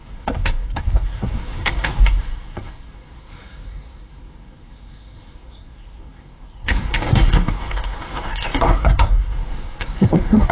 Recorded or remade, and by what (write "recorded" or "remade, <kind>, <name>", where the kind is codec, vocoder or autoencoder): remade, codec, SNAC